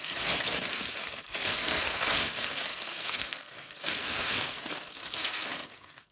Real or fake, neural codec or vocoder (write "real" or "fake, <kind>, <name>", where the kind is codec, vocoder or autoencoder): fake, codec, SNAC